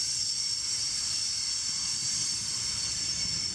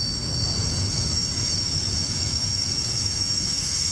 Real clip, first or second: first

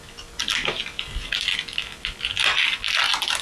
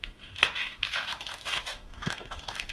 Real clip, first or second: first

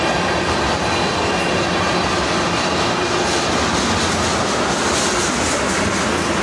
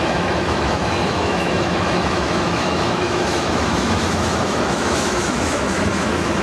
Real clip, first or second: first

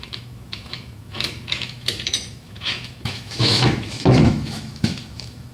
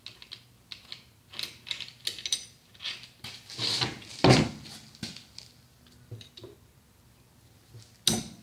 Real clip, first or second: second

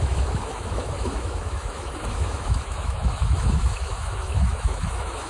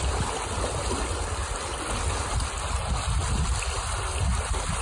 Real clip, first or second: second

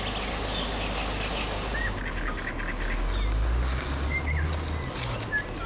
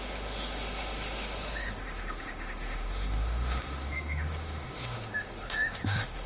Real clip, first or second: first